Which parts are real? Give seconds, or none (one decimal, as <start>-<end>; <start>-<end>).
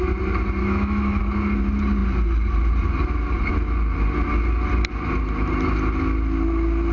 0.0-0.6; 1.2-6.9